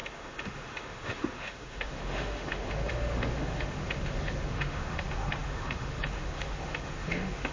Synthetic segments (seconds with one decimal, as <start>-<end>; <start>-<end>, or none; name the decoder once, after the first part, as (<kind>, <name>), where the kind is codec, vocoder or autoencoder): 0.0-7.5 (autoencoder, DAC-VAE)